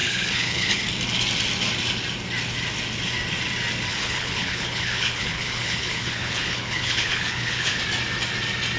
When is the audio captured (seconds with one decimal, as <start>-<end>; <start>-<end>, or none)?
0.8-3.9; 7.8-8.8